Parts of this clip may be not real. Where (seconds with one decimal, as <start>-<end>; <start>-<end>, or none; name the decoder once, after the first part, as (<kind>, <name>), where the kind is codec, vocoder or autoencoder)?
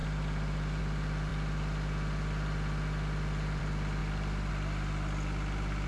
0.0-0.8 (vocoder, BigVGAN v2); 4.0-4.5